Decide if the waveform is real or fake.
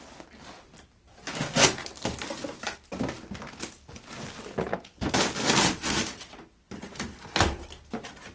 real